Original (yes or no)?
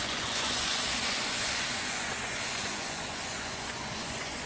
no